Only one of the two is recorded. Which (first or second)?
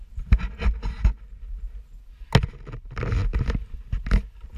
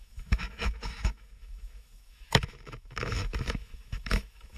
first